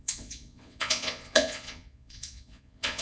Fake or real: fake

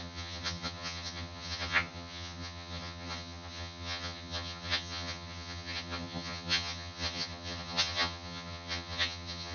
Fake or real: fake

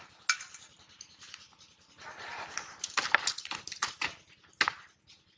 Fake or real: real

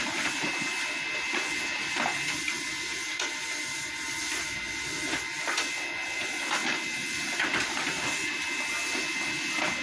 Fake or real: real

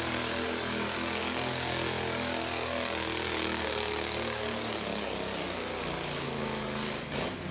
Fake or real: fake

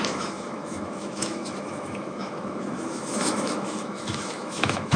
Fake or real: fake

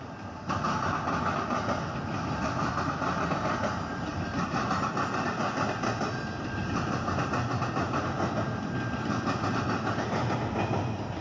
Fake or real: real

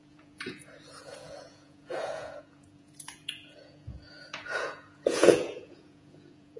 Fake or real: fake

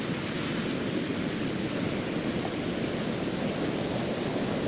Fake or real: real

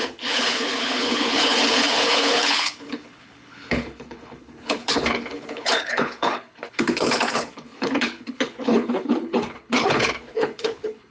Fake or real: fake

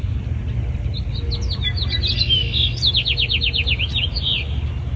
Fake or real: real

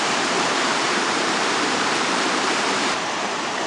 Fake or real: fake